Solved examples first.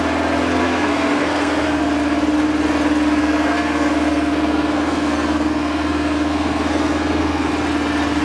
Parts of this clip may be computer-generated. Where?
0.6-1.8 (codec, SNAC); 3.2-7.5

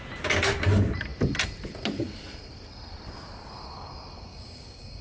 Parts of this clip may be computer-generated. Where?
4.3-5.0 (codec, DAC)

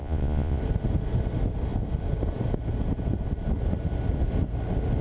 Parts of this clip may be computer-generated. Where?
0.0-0.6 (vocoder, Vocos)